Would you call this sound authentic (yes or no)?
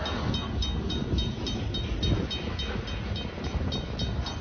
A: yes